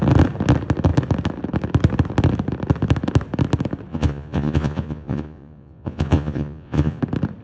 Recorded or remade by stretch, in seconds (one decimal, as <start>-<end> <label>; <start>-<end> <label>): 0.0-3.9 recorded; 3.9-7.0 remade; 7.0-7.4 recorded